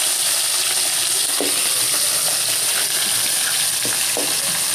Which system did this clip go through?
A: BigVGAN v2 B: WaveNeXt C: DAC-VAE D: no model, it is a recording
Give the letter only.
D